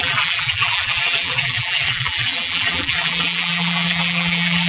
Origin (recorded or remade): remade